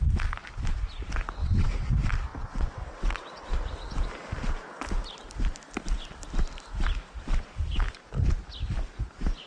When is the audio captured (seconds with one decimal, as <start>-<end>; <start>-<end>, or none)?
0.0-1.4; 1.9-2.3; 3.5-9.5